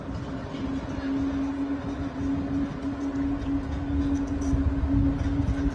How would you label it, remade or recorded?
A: recorded